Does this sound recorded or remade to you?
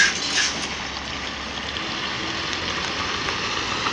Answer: recorded